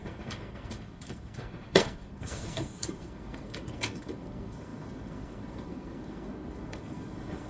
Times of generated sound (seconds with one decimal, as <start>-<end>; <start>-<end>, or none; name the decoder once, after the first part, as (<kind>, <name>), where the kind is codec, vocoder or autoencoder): 0.0-7.5 (codec, SNAC)